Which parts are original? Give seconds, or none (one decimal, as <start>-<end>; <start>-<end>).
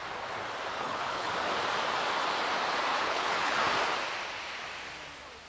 0.0-0.7; 1.3-2.9; 3.5-5.5